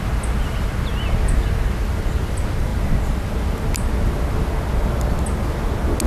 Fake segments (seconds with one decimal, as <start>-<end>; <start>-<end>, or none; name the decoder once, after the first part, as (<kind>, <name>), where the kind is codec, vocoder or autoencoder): none